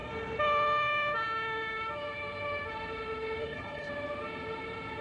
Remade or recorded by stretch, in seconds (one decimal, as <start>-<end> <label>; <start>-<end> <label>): 0.0-3.4 recorded; 3.4-3.9 remade; 3.9-5.0 recorded